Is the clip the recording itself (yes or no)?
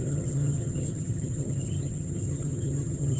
no